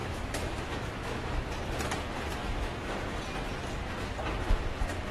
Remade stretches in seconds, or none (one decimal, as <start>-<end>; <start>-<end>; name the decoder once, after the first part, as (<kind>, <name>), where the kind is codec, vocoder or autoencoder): 0.0-1.3 (autoencoder, DAC-VAE); 2.4-3.0